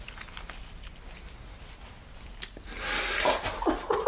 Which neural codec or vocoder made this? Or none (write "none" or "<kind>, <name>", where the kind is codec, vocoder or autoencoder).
none